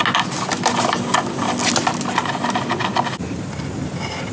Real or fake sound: real